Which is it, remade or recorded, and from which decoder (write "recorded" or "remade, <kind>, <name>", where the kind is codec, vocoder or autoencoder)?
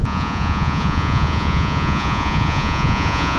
remade, vocoder, Vocos